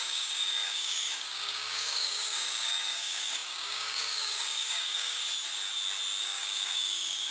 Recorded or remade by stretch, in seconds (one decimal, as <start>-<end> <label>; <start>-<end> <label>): 0.0-5.2 remade; 5.2-6.2 recorded; 6.2-7.3 remade